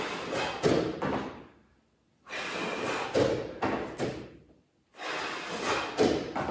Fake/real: real